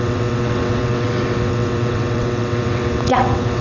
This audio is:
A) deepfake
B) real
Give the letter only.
A